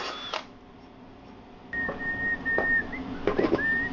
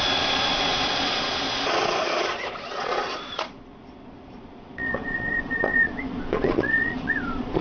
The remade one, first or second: second